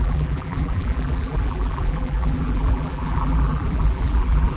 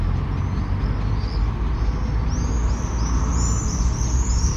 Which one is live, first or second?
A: second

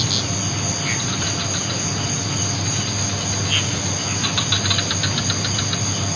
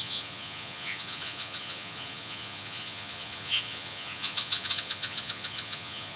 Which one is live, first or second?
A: first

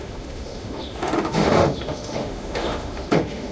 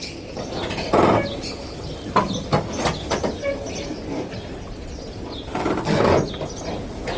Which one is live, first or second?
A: second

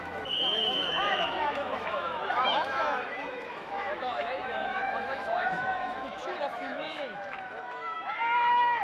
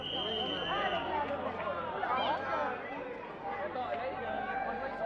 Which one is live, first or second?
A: second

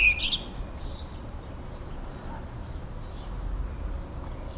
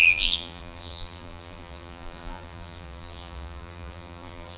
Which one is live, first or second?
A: first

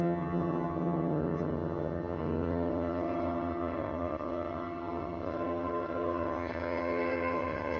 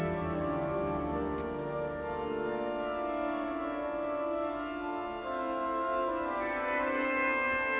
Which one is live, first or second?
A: second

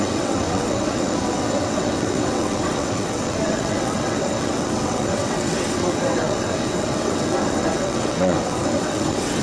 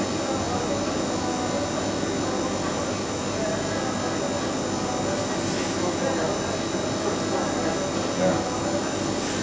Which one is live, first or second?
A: second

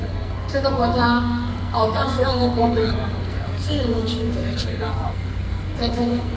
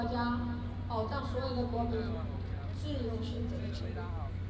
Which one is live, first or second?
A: second